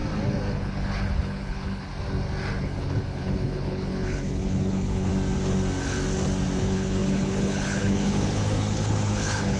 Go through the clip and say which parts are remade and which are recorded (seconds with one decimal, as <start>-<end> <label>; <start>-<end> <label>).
0.0-0.5 recorded; 0.5-1.9 remade; 1.9-2.6 recorded; 2.6-5.1 remade; 5.1-6.6 recorded; 6.6-9.6 remade